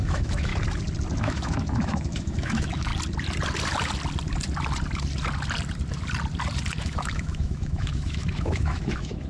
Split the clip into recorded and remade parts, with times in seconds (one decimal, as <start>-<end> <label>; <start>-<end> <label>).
0.0-0.5 remade; 0.5-1.2 recorded; 1.2-2.9 remade; 2.9-6.8 recorded; 6.8-9.3 remade